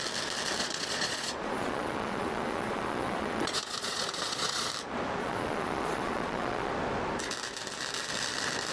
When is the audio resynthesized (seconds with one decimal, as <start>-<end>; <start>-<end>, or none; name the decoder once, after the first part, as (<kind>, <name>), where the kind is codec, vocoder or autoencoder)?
0.6-4.7 (vocoder, Vocos); 5.2-6.7